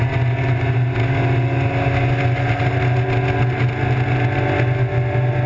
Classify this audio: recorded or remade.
recorded